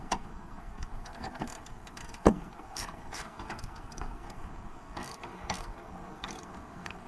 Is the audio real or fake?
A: fake